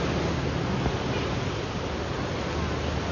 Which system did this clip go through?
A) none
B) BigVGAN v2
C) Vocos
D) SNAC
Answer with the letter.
A